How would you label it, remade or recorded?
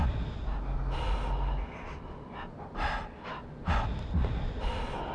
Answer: recorded